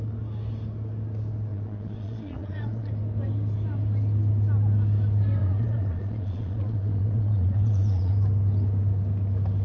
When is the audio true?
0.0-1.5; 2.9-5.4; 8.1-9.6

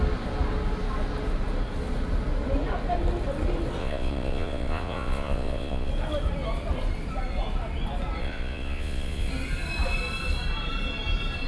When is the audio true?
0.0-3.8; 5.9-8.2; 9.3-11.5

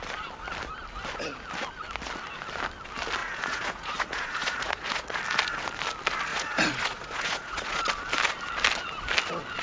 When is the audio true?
0.0-3.2; 5.2-6.3; 7.8-9.6